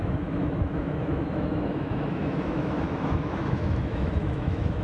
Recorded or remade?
remade